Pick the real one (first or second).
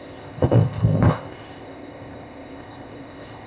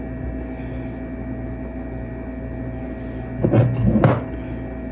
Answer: second